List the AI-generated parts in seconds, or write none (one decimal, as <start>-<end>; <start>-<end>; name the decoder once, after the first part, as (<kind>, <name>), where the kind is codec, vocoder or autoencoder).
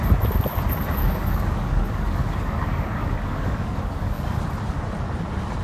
1.0-4.4 (codec, DAC)